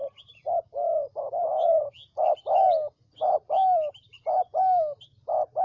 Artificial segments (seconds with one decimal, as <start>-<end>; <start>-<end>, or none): none